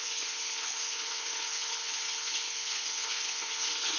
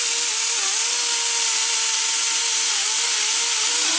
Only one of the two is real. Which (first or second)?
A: second